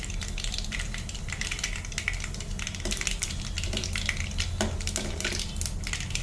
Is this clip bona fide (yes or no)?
yes